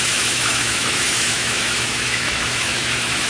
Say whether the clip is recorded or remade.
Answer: remade